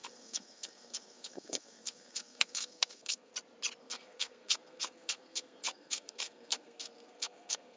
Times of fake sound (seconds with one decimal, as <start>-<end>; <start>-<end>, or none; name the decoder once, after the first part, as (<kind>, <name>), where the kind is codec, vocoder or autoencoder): 0.0-3.3 (codec, SNAC); 3.8-7.8